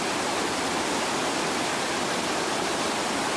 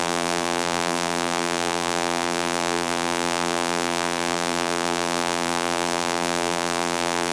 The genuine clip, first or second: first